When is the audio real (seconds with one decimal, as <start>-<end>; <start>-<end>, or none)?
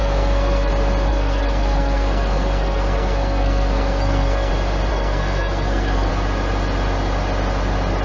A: 0.7-1.1; 4.5-4.9; 6.1-8.0